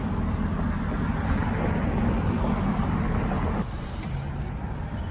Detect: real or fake real